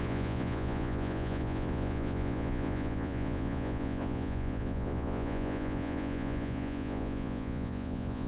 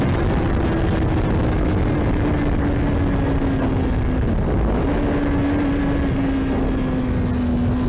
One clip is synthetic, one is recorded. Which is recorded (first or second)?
second